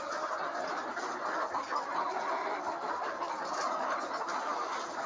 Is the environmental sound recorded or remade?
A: recorded